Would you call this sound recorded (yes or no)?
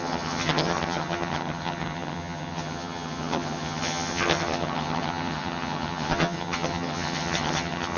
no